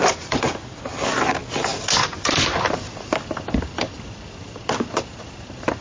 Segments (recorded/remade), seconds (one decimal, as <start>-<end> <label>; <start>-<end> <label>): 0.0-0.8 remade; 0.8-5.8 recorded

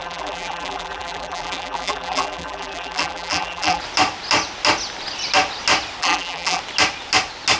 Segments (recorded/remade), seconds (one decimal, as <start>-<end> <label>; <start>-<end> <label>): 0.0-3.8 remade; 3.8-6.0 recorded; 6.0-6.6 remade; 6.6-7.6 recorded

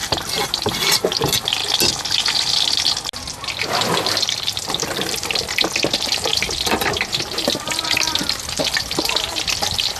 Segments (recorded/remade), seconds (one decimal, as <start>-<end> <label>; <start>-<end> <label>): 0.0-1.6 remade; 1.6-3.5 recorded; 3.5-10.0 remade